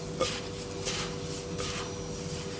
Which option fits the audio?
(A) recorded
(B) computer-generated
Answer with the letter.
A